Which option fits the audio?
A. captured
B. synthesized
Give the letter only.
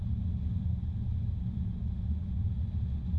A